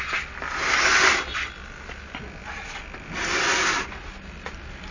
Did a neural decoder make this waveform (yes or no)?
no